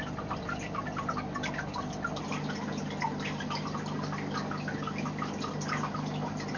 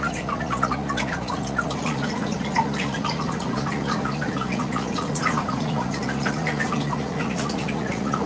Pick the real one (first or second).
first